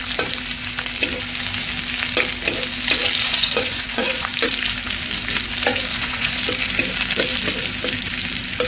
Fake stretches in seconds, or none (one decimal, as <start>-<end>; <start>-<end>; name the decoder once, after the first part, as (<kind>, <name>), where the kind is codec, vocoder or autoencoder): 3.2-4.3 (vocoder, Vocos); 5.9-6.4